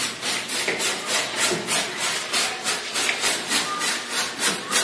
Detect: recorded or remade recorded